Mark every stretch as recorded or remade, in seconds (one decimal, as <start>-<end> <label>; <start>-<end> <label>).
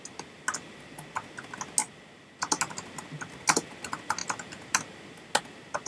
0.0-5.9 recorded